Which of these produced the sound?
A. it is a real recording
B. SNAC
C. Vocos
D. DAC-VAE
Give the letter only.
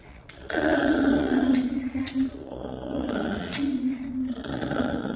C